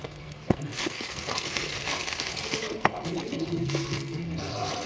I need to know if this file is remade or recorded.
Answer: remade